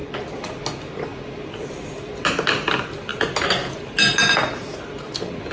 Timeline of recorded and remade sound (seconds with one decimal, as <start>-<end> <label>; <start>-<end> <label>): 0.0-5.5 recorded